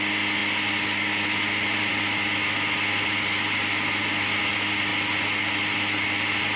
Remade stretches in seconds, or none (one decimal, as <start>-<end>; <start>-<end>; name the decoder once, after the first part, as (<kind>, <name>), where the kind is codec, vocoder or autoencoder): none